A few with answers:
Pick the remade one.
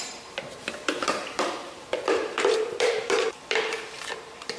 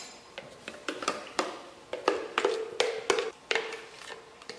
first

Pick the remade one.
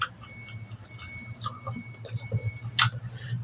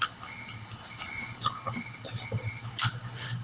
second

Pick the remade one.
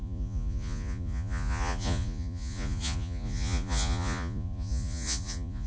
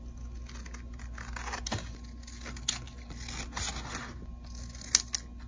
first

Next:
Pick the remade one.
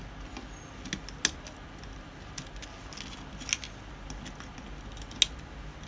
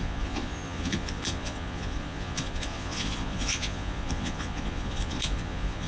second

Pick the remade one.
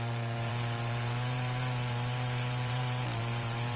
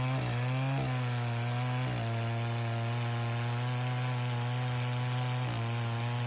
first